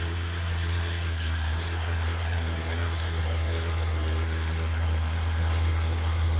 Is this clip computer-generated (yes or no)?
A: yes